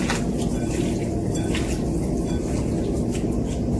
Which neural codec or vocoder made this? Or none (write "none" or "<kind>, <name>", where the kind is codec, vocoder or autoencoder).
none